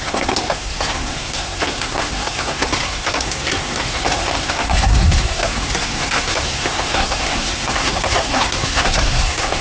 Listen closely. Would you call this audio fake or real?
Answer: fake